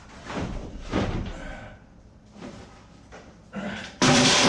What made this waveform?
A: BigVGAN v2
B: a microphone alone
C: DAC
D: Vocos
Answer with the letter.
A